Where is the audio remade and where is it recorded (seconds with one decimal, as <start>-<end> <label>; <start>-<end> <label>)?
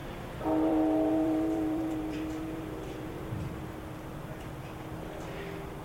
0.0-3.5 remade; 3.5-5.8 recorded